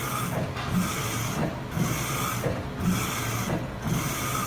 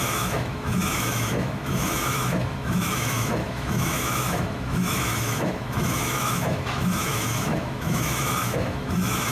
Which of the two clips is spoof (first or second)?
second